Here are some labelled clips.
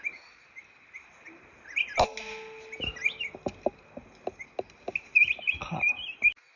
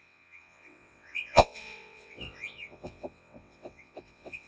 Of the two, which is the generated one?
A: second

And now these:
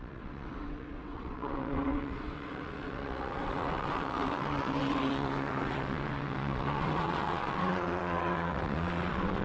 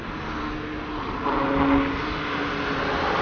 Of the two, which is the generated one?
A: first